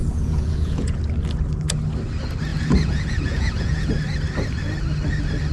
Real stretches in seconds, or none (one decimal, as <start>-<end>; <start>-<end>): 1.0-2.5; 3.9-5.5